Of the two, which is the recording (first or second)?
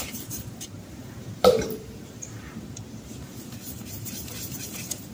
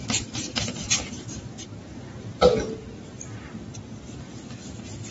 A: second